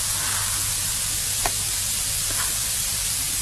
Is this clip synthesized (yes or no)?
no